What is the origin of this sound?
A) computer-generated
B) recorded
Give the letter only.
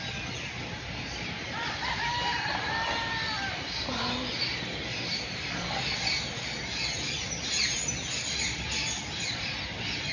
B